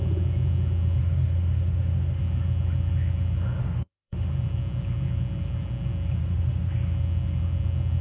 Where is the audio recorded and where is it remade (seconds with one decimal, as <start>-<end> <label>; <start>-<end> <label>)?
0.0-1.0 recorded; 1.0-2.2 remade; 2.2-3.6 recorded; 3.6-4.3 remade; 4.3-6.2 recorded; 6.2-6.7 remade; 6.7-8.0 recorded